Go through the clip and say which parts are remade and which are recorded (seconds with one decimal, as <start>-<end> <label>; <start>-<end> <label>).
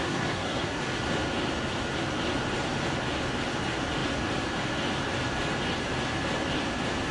0.0-0.8 remade; 0.8-7.1 recorded